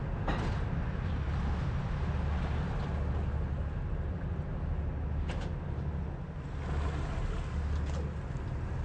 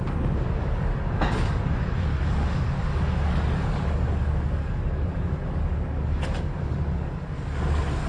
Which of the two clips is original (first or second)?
first